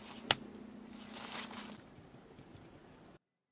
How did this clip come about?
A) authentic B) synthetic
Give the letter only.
A